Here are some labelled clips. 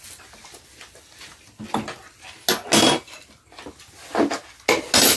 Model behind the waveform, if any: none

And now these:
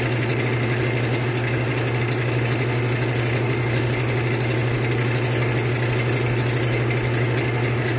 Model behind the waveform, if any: none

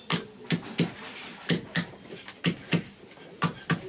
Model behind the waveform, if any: none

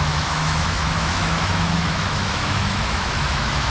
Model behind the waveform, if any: autoencoder, DAC-VAE